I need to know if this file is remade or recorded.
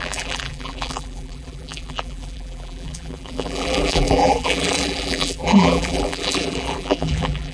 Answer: remade